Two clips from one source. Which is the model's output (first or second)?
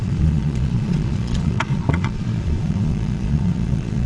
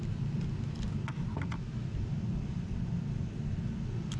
first